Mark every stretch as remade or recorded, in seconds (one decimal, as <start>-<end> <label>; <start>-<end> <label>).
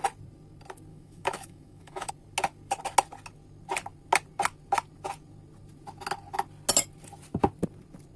0.0-0.9 recorded; 0.9-2.1 remade; 2.1-8.2 recorded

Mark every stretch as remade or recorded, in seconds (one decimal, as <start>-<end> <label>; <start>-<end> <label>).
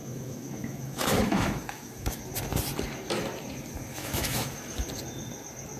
0.0-2.2 remade; 2.2-3.9 recorded; 3.9-4.5 remade; 4.5-5.8 recorded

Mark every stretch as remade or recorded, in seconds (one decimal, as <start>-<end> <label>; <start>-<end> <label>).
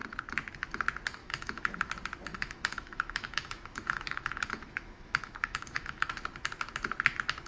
0.0-1.2 recorded; 1.2-1.9 remade; 1.9-2.3 recorded; 2.3-6.1 remade; 6.1-7.5 recorded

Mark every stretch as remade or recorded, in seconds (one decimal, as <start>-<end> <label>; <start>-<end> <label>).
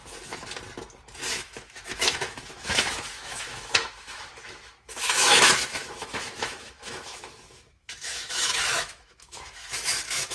0.0-1.3 recorded; 1.3-10.3 remade